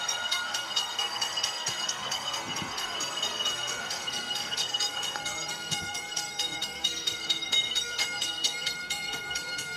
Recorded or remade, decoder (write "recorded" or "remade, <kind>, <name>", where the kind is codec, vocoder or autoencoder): remade, codec, SNAC